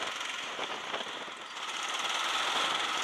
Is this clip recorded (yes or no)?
yes